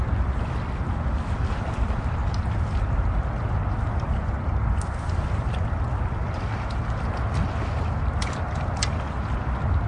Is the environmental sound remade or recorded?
recorded